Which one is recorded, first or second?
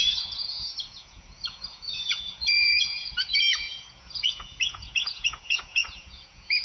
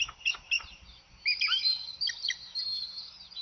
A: second